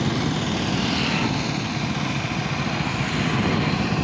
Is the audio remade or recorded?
recorded